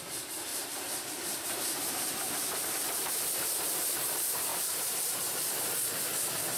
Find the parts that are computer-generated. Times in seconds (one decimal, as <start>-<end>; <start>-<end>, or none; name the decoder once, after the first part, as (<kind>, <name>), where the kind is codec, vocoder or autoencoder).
0.5-3.1 (vocoder, BigVGAN v2); 4.5-5.6